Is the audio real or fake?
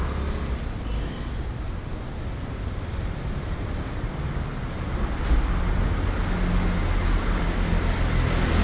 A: real